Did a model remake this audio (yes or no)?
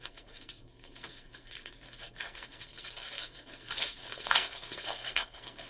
yes